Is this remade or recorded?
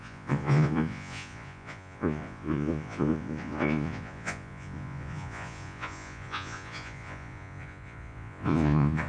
remade